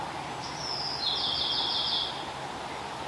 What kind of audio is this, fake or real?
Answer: real